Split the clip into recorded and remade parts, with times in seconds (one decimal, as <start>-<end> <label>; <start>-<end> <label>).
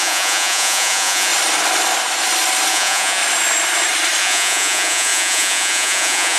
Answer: 0.0-1.3 remade; 1.3-2.7 recorded; 2.7-3.2 remade; 3.2-4.2 recorded; 4.2-6.4 remade